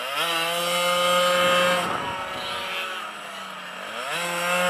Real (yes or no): yes